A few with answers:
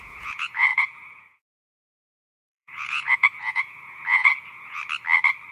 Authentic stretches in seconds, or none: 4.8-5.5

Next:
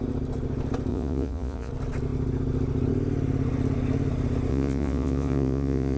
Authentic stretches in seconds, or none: 0.0-0.9; 1.7-4.5

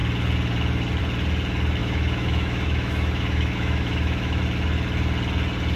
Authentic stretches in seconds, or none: 0.0-1.8; 4.4-5.8

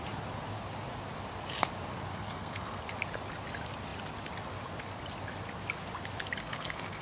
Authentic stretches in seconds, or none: 0.0-2.1; 2.8-6.4